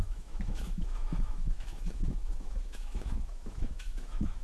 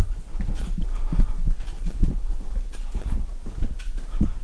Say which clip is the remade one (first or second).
first